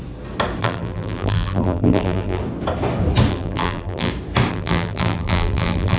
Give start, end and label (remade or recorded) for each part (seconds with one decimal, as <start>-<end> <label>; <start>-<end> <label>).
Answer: 0.0-0.6 recorded; 0.6-2.4 remade; 2.4-3.3 recorded; 3.3-4.1 remade; 4.1-4.5 recorded; 4.5-6.0 remade